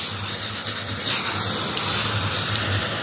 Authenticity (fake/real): real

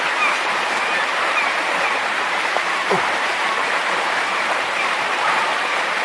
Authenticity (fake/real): fake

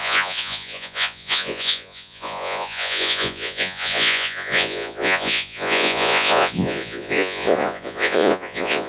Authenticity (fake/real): fake